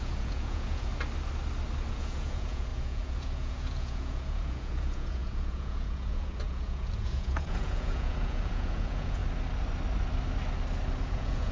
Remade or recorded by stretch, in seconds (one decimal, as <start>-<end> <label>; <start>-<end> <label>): 0.0-0.9 remade; 0.9-1.9 recorded; 1.9-9.2 remade; 9.2-11.0 recorded; 11.0-11.5 remade

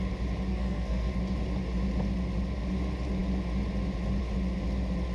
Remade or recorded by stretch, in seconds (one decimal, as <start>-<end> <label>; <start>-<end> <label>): 0.0-0.5 recorded; 0.5-1.2 remade; 1.2-5.1 recorded

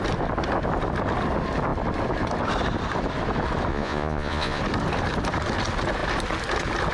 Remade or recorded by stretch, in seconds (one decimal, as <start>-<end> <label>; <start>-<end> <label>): 0.0-3.7 recorded; 3.7-4.6 remade; 4.6-6.9 recorded

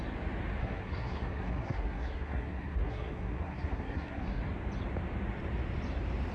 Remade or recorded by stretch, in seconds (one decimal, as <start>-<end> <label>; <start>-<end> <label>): 0.0-0.6 recorded; 0.6-4.4 remade; 4.4-6.3 recorded

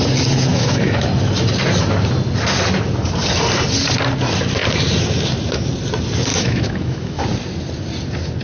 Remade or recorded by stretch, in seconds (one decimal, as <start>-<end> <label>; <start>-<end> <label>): 0.0-0.5 recorded; 0.5-1.1 remade; 1.1-6.3 recorded; 6.3-7.2 remade; 7.2-8.4 recorded

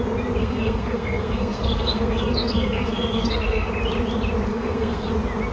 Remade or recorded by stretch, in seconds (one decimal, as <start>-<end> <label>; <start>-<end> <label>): 0.0-0.4 recorded; 0.4-3.7 remade; 3.7-4.5 recorded; 4.5-5.1 remade; 5.1-5.5 recorded